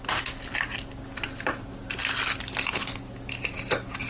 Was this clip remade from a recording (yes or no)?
no